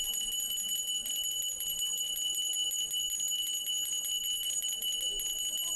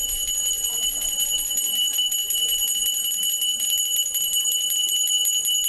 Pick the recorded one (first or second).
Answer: first